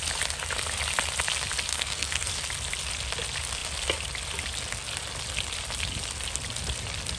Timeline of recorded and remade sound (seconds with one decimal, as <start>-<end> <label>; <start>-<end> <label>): 0.0-1.7 recorded; 1.7-2.3 remade; 2.3-7.2 recorded